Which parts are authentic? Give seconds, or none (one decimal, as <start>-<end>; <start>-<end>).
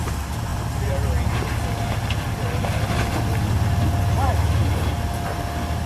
0.0-5.9